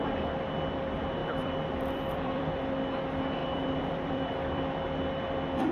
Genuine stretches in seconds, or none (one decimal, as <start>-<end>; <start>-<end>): 0.0-1.2; 2.5-3.4; 4.6-5.7